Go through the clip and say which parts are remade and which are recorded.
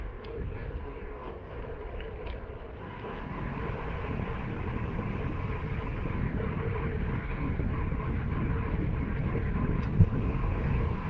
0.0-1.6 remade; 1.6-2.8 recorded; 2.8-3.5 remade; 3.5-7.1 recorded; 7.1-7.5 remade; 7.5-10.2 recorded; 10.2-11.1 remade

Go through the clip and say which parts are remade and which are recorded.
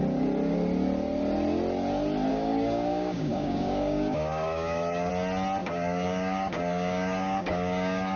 0.0-2.3 recorded; 2.3-5.1 remade; 5.1-5.6 recorded; 5.6-8.2 remade